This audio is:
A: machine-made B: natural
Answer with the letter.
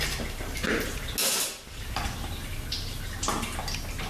B